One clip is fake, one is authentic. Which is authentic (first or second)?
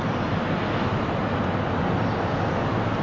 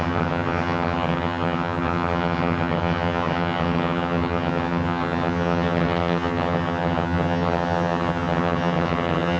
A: first